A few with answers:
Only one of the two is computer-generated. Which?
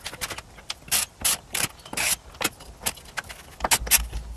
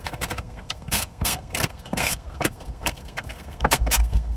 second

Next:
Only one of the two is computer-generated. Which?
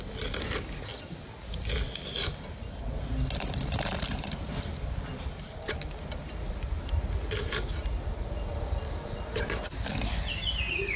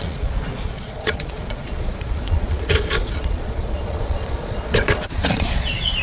second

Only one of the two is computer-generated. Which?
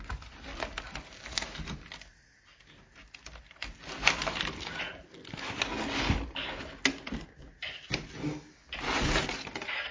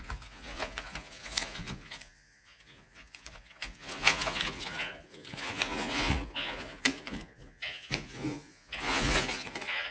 second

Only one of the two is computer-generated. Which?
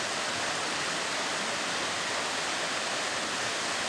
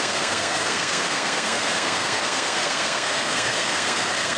second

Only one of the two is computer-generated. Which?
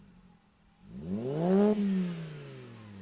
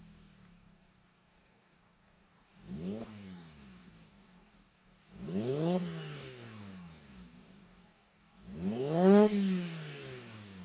second